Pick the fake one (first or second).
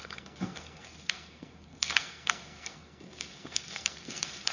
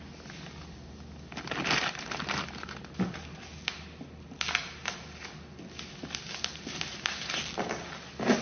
first